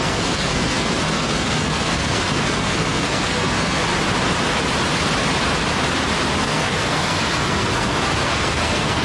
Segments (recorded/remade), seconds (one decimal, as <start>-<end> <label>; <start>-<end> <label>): 0.0-3.8 remade; 3.8-6.4 recorded; 6.4-9.0 remade